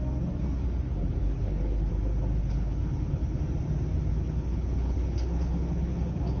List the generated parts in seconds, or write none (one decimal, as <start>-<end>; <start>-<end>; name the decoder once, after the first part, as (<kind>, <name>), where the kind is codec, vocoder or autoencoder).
1.2-1.9 (codec, HILCodec); 2.4-3.4; 4.1-6.4